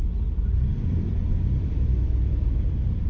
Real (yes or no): no